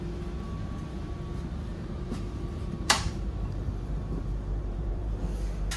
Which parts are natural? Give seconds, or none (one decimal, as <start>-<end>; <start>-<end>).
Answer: 0.0-1.7; 5.2-5.8